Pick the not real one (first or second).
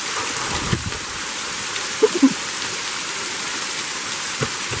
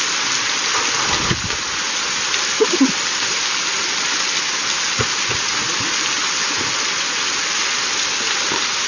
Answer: first